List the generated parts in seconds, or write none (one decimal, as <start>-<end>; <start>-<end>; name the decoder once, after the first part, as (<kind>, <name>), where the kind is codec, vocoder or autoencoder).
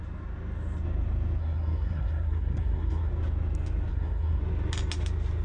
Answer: 1.4-3.1 (codec, SNAC); 3.9-4.4